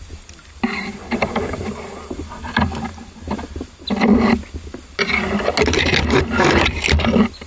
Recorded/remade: recorded